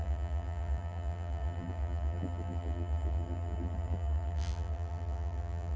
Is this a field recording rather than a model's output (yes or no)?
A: no